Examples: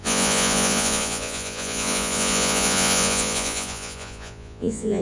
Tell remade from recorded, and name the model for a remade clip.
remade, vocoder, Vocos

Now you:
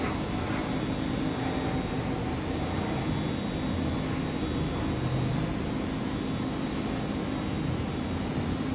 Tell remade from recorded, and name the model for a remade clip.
recorded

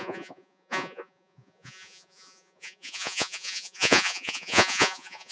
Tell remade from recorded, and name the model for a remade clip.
remade, vocoder, Vocos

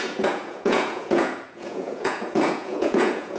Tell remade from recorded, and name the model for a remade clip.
remade, vocoder, Vocos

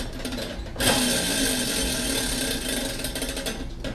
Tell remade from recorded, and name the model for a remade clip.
recorded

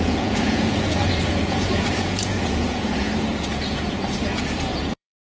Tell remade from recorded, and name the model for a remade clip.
remade, vocoder, Vocos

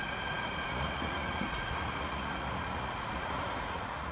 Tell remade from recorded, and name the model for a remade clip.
remade, vocoder, Vocos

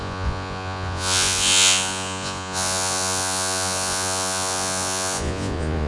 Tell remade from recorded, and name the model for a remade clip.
remade, vocoder, Vocos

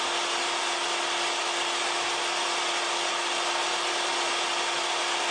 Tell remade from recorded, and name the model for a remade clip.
recorded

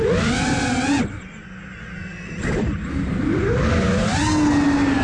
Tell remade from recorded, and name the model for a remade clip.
recorded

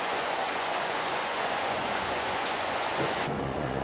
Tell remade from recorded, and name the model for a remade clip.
remade, vocoder, Vocos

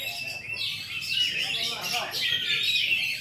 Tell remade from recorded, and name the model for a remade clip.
recorded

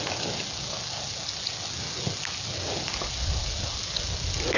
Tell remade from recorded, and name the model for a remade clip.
recorded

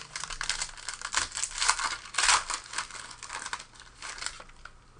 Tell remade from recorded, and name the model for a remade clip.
recorded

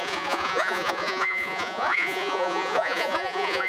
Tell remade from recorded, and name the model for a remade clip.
remade, vocoder, Vocos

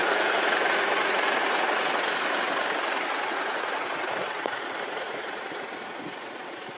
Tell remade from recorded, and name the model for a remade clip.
remade, vocoder, Vocos